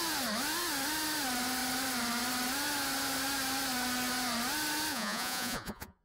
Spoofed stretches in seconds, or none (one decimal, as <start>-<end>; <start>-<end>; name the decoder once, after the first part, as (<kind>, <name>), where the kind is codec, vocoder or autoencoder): 4.9-6.0 (vocoder, Vocos)